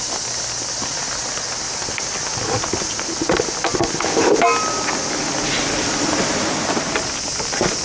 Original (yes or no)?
yes